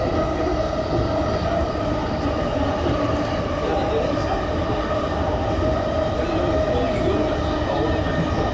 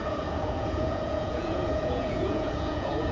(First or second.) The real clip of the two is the first